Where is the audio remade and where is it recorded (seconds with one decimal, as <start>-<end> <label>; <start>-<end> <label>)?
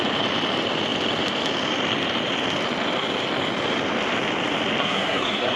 0.0-4.8 recorded; 4.8-5.6 remade